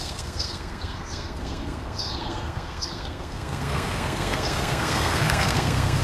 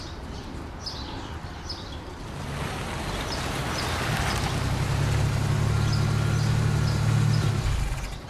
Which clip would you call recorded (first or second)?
second